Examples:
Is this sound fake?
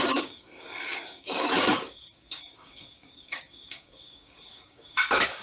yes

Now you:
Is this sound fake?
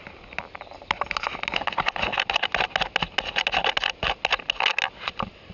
no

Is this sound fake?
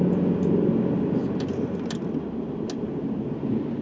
no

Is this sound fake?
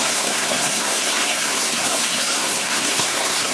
yes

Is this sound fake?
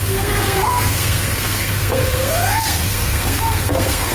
yes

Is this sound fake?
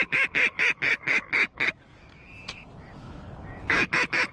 yes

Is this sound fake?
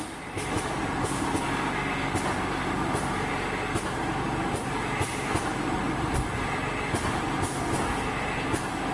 no